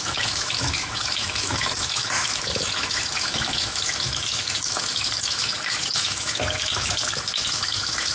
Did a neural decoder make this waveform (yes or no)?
yes